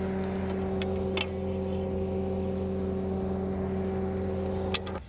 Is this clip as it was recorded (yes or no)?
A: yes